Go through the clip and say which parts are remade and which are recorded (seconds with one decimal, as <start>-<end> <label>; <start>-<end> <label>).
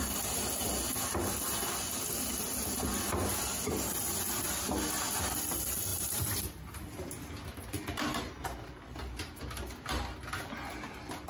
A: 0.0-5.9 recorded; 5.9-9.4 remade; 9.4-11.3 recorded